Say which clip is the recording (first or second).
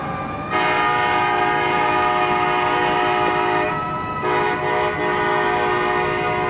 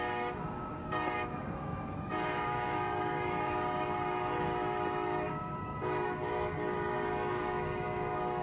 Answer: first